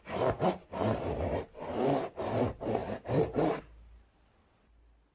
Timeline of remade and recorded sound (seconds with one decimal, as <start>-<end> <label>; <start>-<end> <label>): 0.0-2.8 recorded; 2.8-3.6 remade; 3.6-5.1 recorded